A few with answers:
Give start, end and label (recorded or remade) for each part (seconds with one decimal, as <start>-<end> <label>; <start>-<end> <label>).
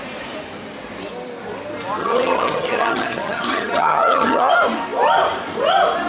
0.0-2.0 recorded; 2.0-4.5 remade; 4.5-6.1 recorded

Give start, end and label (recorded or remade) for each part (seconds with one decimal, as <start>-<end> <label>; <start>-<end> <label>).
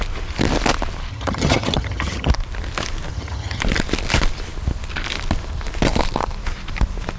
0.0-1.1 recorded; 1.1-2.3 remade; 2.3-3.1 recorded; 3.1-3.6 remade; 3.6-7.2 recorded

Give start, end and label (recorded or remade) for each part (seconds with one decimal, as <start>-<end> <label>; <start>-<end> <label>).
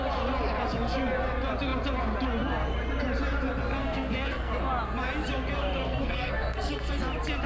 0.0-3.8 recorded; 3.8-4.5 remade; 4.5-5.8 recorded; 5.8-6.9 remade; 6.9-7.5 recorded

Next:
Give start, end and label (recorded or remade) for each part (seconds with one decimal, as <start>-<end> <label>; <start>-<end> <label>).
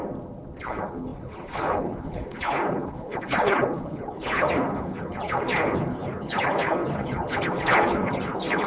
0.0-0.6 recorded; 0.6-8.7 remade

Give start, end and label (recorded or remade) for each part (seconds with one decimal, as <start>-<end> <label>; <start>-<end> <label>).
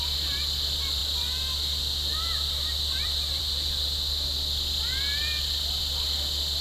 0.0-6.6 recorded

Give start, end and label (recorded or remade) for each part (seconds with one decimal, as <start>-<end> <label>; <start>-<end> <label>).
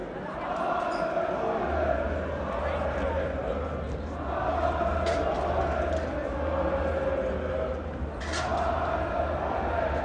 0.0-10.0 recorded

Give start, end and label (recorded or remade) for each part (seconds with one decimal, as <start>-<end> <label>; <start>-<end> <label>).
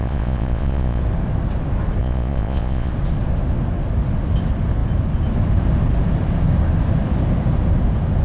0.0-1.0 remade; 1.0-2.0 recorded; 2.0-2.9 remade; 2.9-8.2 recorded